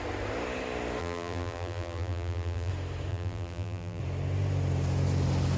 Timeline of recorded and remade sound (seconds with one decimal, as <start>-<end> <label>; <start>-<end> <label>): 0.0-1.0 recorded; 1.0-2.7 remade; 2.7-3.1 recorded; 3.1-4.0 remade; 4.0-5.6 recorded